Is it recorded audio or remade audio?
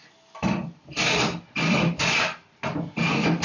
recorded